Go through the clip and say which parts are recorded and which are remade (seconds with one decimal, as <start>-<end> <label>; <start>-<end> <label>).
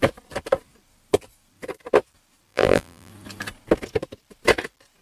0.0-2.5 recorded; 2.5-3.1 remade; 3.1-5.0 recorded